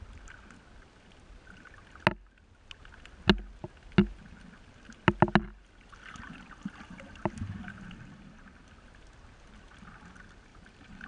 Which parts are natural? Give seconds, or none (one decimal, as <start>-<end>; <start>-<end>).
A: 0.0-10.5